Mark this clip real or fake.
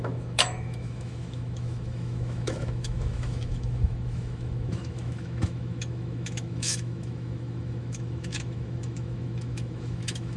fake